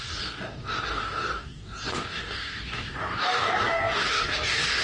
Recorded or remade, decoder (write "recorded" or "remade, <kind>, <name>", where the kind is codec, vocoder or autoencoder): remade, codec, DAC